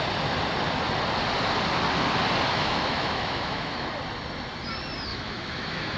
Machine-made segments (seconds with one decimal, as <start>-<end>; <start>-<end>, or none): 2.5-3.9; 5.1-6.0